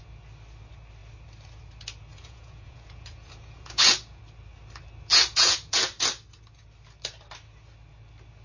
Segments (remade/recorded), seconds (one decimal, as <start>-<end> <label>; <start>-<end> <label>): 0.0-2.1 recorded; 2.1-4.2 remade; 4.2-5.1 recorded; 5.1-5.8 remade; 5.8-8.4 recorded